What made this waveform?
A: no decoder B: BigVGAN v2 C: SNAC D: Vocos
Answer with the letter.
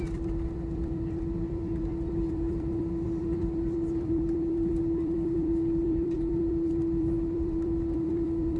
B